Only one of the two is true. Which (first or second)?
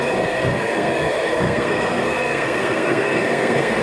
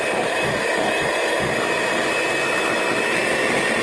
second